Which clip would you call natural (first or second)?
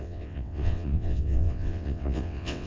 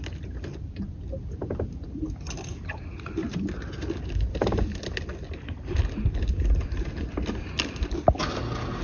second